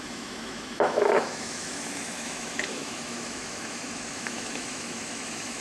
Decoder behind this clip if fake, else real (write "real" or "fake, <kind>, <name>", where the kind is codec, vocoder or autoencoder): fake, autoencoder, DAC-VAE